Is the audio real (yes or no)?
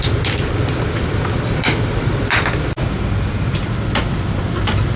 no